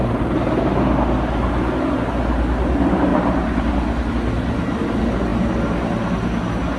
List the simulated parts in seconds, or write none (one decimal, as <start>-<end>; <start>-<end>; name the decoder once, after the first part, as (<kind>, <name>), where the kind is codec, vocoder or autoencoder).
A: 0.0-0.6 (vocoder, BigVGAN v2)